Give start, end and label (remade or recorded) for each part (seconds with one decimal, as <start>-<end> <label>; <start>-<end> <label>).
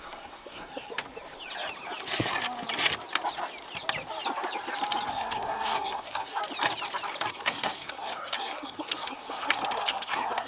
0.0-0.9 remade; 0.9-5.1 recorded; 5.1-6.4 remade; 6.4-7.3 recorded; 7.3-10.5 remade